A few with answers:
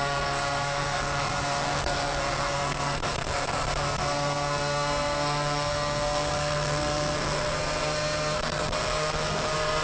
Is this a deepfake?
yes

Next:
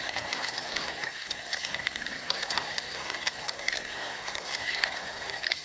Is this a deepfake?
yes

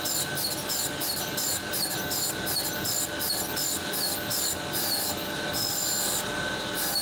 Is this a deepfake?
no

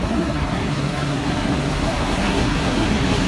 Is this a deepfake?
yes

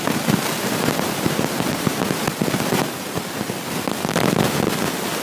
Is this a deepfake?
no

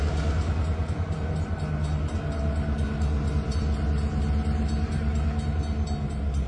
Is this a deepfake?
no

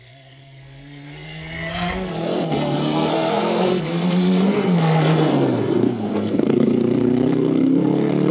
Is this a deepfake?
yes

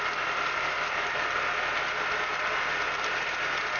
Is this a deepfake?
no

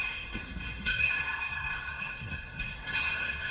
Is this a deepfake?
yes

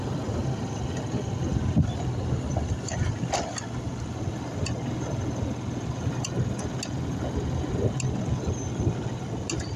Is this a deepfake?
no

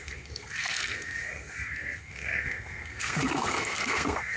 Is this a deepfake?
yes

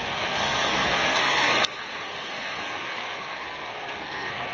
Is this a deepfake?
yes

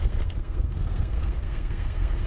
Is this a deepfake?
yes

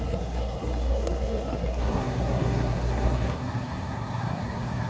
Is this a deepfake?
yes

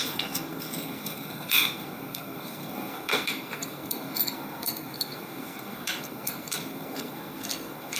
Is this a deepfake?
yes